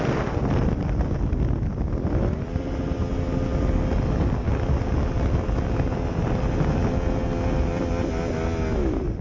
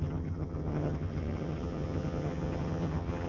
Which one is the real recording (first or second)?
first